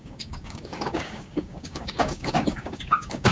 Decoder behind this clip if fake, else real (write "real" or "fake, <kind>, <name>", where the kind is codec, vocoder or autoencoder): fake, codec, DAC